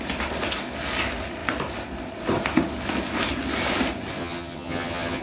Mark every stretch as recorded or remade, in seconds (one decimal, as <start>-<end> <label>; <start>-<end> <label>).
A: 0.0-4.2 recorded; 4.2-5.2 remade